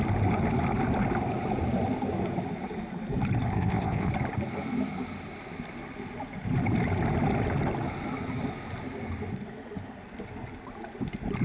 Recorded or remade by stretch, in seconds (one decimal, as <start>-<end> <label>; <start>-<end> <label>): 0.0-3.5 recorded; 3.5-4.1 remade; 4.1-11.4 recorded